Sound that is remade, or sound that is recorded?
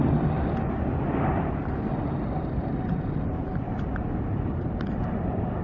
recorded